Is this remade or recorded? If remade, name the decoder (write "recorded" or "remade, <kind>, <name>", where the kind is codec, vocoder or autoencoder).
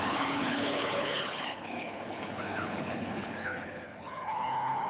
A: remade, codec, HILCodec